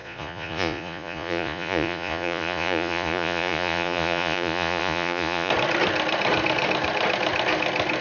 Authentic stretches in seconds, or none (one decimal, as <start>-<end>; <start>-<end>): 5.5-8.0